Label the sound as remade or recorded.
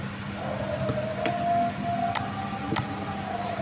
recorded